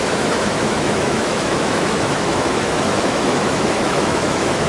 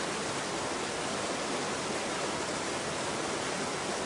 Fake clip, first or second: first